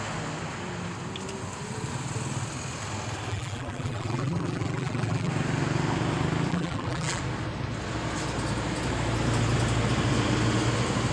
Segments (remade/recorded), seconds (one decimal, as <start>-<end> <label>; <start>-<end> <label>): 0.0-3.3 recorded; 3.3-5.3 remade; 5.3-6.5 recorded; 6.5-7.2 remade; 7.2-11.1 recorded